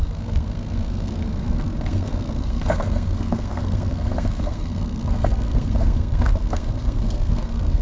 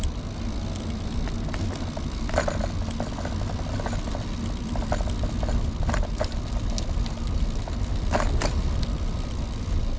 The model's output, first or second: first